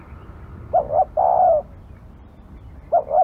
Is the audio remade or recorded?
recorded